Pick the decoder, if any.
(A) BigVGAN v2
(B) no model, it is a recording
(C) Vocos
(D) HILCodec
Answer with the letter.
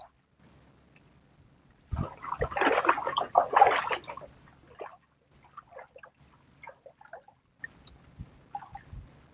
B